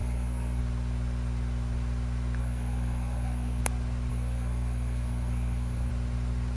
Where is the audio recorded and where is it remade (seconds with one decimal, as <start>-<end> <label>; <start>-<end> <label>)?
0.0-0.6 remade; 0.6-2.4 recorded; 2.4-3.6 remade; 3.6-4.1 recorded; 4.1-5.9 remade; 5.9-6.6 recorded